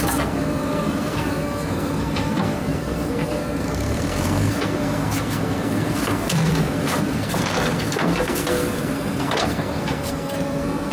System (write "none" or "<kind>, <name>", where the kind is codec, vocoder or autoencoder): codec, SNAC